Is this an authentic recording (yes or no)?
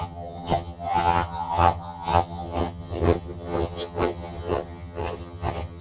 no